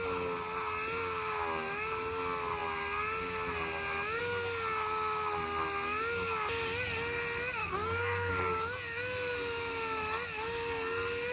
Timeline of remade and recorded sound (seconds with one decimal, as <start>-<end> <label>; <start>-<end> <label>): 0.0-7.6 recorded; 7.6-8.3 remade; 8.3-11.3 recorded